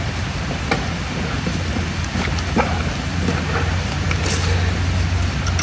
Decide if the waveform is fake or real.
real